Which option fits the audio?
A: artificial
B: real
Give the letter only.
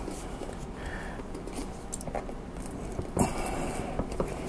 B